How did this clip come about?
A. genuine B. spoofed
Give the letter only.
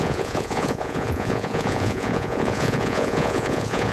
B